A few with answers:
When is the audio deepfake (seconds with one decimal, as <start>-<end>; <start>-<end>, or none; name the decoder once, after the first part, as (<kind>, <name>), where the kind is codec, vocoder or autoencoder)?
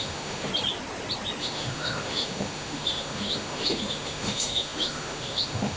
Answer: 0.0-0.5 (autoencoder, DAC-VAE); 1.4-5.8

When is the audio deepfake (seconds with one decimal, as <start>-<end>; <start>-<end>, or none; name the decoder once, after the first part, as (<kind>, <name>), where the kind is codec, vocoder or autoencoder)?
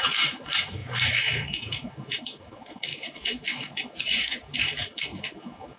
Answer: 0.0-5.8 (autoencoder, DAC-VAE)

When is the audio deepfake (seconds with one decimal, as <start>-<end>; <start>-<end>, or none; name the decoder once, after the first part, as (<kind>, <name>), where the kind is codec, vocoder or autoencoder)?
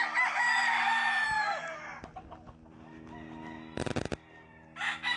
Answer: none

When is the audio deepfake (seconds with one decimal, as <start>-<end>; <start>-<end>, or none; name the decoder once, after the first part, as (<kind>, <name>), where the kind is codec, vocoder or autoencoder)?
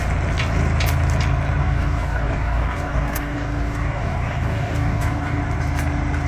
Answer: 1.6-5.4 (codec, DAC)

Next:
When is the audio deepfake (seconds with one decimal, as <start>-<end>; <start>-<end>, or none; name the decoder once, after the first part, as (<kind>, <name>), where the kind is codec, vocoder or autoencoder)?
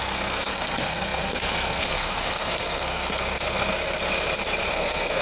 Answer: 0.0-3.7 (codec, SNAC); 4.7-5.2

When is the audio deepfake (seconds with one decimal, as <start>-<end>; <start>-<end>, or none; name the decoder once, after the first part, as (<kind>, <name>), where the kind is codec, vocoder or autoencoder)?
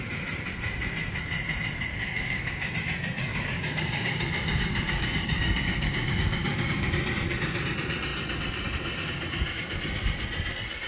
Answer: 1.9-2.7 (codec, DAC); 3.3-6.9